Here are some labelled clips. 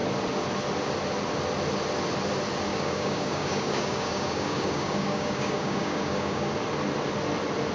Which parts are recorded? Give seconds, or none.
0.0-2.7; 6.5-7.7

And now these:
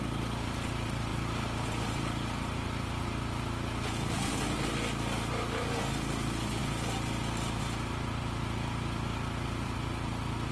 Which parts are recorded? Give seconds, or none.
0.0-10.5

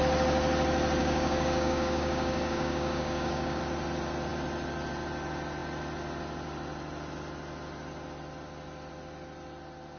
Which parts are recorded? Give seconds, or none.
0.0-1.0; 3.6-10.0

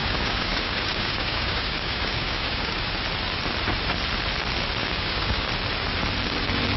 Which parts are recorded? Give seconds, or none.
2.9-4.8; 5.5-6.8

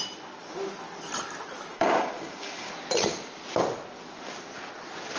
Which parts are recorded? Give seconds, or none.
0.0-1.7; 2.7-5.2

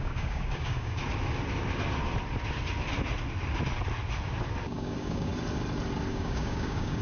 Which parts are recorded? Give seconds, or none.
1.0-4.6; 5.3-6.1